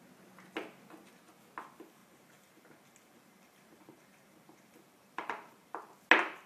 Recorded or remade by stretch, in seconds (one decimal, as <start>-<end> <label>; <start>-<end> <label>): 0.0-2.0 recorded; 2.0-5.9 remade; 5.9-6.5 recorded